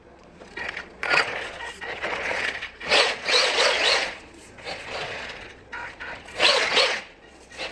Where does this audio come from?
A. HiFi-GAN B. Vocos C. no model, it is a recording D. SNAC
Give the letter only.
B